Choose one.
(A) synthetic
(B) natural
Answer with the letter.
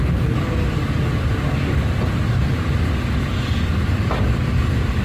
B